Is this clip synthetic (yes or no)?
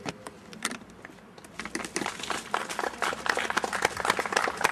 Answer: no